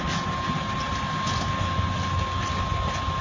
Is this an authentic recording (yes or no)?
yes